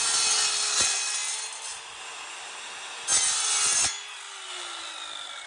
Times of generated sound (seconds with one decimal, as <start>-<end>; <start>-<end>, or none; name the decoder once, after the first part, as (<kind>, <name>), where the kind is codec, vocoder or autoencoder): none